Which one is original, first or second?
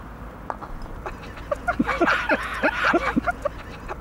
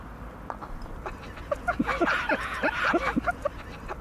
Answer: first